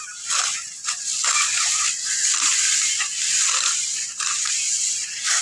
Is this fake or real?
real